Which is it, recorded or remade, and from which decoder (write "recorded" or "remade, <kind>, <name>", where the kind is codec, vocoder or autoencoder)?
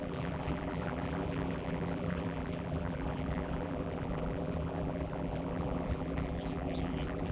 remade, vocoder, BigVGAN v2